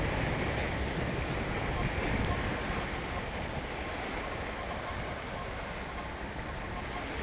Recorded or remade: recorded